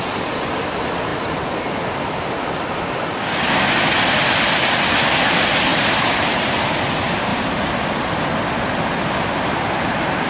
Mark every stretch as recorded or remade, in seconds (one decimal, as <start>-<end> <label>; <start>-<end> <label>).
0.0-5.7 recorded; 5.7-6.7 remade; 6.7-7.3 recorded; 7.3-8.0 remade; 8.0-10.3 recorded